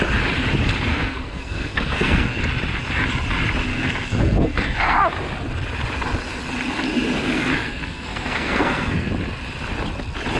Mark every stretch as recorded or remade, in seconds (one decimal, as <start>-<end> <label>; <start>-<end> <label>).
0.0-0.9 recorded; 0.9-2.4 remade; 2.4-3.7 recorded; 3.7-5.0 remade; 5.0-7.2 recorded; 7.2-9.1 remade; 9.1-10.4 recorded